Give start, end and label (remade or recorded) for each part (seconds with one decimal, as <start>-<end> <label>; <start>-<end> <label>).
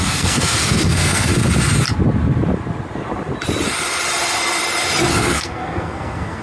0.0-1.3 remade; 1.3-5.1 recorded; 5.1-6.4 remade